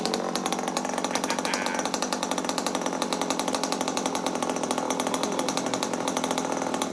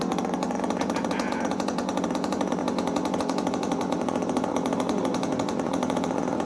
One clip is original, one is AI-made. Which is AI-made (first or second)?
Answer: second